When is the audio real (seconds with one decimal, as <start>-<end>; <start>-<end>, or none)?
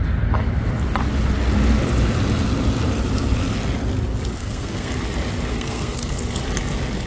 0.0-4.4; 4.9-5.5; 6.1-7.1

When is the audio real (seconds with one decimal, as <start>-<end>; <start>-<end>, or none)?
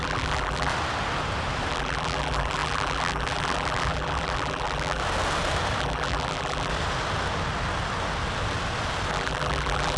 0.7-1.7; 5.0-5.8; 6.7-9.1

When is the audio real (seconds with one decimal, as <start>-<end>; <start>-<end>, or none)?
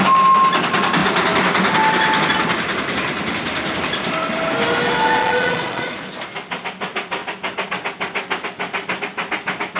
0.0-5.2; 6.0-9.8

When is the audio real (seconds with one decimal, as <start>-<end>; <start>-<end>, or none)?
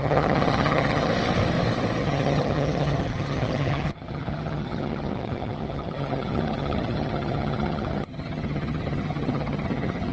1.1-2.0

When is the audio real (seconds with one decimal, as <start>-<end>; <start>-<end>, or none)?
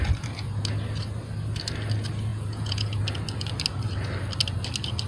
0.0-2.3; 3.0-5.1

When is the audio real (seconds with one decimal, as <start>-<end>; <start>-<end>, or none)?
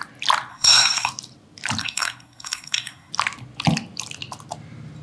0.0-0.5; 1.1-1.8; 3.1-5.0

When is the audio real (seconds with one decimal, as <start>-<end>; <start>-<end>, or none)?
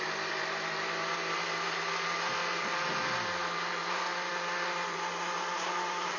0.0-6.2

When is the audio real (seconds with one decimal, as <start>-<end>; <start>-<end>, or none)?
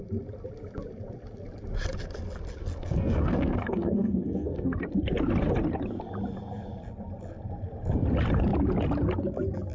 0.0-2.6; 4.8-9.7